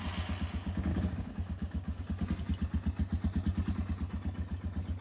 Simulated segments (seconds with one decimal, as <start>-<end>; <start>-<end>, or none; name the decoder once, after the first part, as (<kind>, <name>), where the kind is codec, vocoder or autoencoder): 0.9-2.0 (codec, DAC)